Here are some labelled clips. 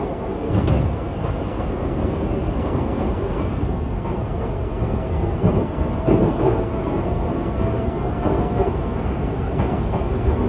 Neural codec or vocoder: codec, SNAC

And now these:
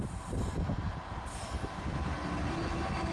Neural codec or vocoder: none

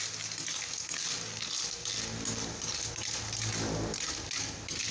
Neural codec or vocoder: none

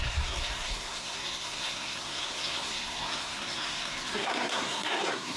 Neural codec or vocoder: codec, SNAC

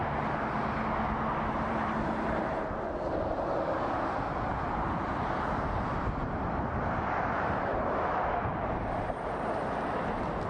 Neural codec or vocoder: none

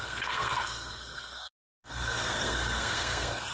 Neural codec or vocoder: codec, SNAC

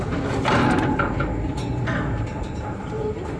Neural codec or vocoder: none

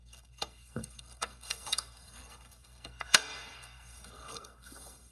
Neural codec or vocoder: codec, SNAC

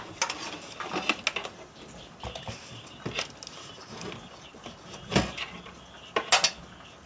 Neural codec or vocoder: none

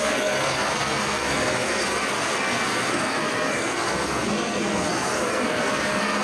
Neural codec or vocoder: codec, SNAC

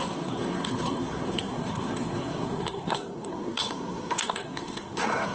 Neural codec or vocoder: codec, SNAC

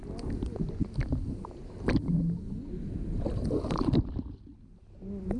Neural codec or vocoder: none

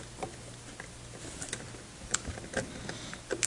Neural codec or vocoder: none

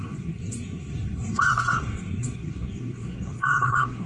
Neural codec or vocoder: codec, SNAC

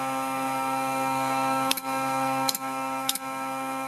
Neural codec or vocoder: codec, SNAC